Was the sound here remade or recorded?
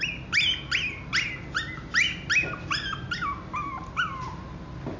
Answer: recorded